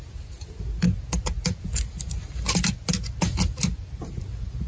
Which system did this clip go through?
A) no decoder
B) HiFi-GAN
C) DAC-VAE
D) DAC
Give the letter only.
A